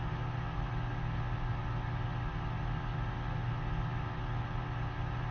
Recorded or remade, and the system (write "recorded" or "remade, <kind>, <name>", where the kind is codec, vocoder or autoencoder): recorded